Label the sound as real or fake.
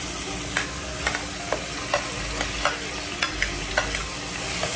real